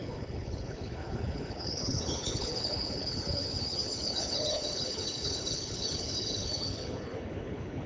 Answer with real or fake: fake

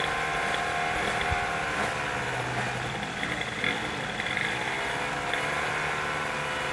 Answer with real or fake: real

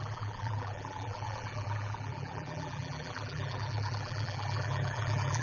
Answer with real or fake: fake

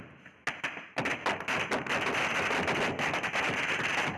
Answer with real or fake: real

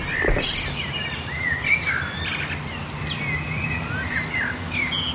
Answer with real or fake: real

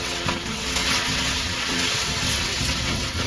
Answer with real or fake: fake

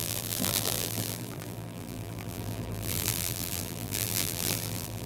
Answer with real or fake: fake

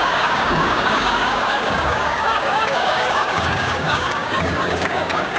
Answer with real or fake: fake